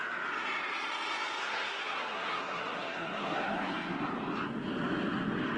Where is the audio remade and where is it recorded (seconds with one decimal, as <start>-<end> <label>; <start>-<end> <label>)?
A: 0.0-1.4 recorded; 1.4-4.1 remade; 4.1-5.6 recorded